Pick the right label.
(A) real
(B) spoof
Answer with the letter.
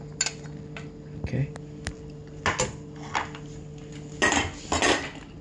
A